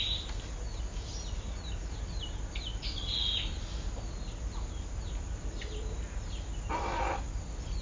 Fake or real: real